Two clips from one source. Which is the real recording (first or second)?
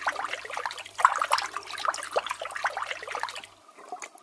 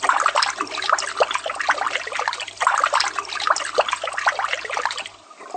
first